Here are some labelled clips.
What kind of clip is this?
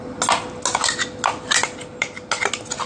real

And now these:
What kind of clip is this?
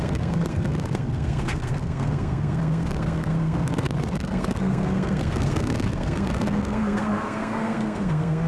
fake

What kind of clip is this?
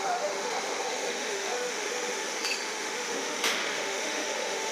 fake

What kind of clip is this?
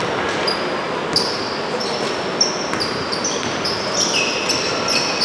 real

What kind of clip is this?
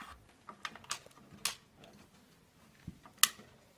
real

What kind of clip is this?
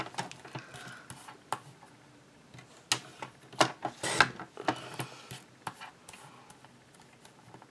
real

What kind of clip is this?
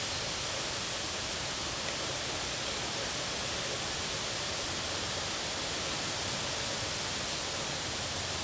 real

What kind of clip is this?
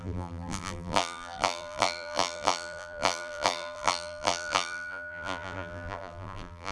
fake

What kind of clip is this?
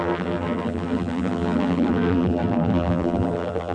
fake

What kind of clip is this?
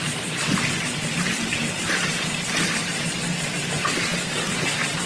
real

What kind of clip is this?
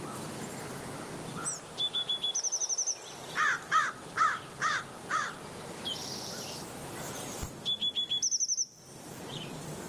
real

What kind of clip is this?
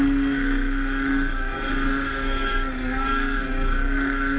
fake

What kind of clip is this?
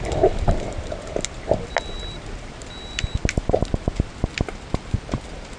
real